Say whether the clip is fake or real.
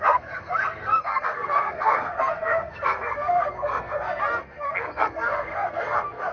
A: fake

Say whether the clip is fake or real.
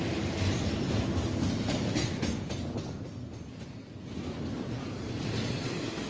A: real